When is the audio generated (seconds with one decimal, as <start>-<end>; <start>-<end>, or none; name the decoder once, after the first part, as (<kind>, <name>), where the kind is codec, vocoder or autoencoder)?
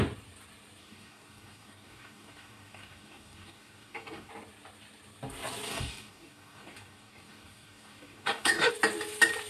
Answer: 0.8-4.3 (codec, DAC); 5.7-8.7